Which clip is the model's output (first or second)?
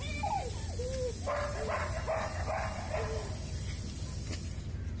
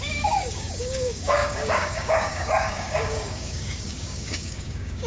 second